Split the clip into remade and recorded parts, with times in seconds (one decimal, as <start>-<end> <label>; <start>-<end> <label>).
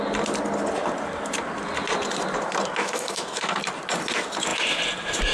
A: 0.0-2.8 recorded; 2.8-3.6 remade; 3.6-5.3 recorded